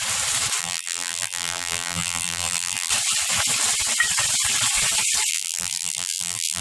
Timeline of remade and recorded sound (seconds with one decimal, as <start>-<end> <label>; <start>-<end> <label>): 0.0-0.6 recorded; 0.6-2.9 remade; 2.9-5.3 recorded; 5.3-6.6 remade